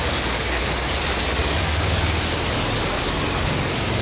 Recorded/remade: remade